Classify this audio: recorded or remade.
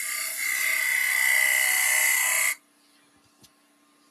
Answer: recorded